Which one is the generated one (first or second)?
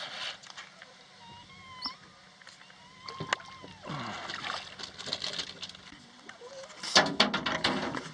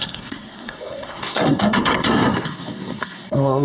second